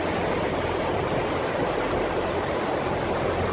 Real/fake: real